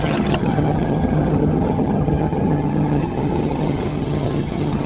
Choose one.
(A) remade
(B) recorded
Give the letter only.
A